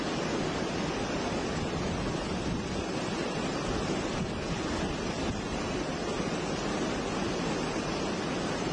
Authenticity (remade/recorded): recorded